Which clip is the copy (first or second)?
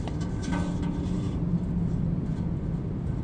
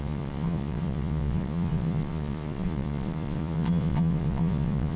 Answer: second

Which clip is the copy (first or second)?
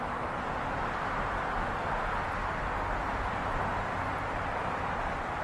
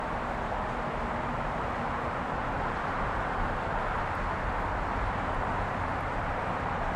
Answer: second